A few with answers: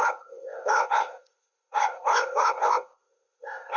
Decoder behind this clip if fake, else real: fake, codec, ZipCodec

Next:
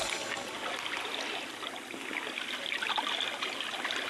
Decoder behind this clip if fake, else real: real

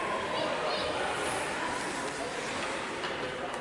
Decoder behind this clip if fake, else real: fake, vocoder, BigVGAN v2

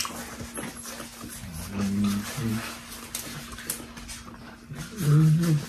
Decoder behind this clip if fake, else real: real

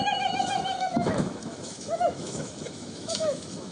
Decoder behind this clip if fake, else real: fake, autoencoder, DAC-VAE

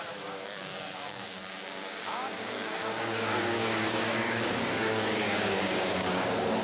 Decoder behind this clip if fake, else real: fake, codec, DAC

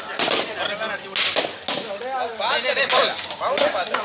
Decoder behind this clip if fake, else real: real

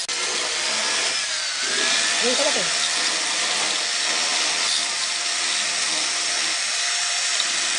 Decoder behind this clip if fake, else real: real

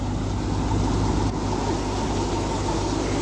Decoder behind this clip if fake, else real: real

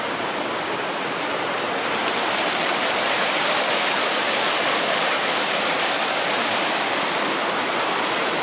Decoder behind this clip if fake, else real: real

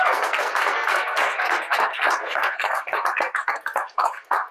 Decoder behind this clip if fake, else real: fake, codec, SNAC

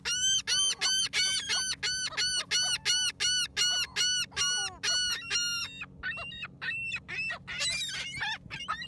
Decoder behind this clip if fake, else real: real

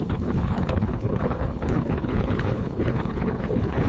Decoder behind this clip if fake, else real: fake, codec, HILCodec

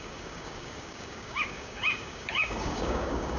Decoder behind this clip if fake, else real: fake, codec, DAC